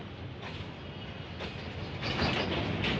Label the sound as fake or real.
real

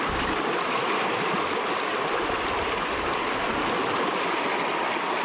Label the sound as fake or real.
real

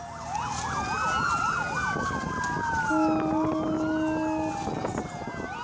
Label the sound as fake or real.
real